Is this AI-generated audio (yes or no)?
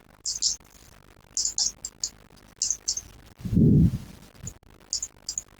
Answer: no